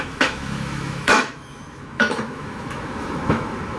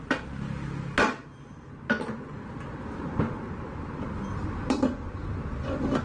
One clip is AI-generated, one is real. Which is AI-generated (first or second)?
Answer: first